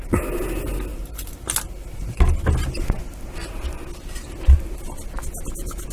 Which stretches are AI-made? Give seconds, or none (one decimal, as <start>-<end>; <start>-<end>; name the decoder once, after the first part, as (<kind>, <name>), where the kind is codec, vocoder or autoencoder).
none